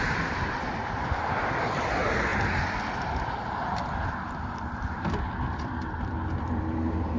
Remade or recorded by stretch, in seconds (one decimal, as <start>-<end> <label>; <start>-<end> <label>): 0.0-7.2 remade